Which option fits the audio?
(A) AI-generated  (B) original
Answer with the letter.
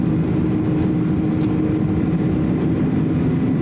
B